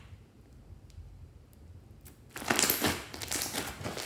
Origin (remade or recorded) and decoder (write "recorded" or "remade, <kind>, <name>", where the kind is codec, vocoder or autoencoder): recorded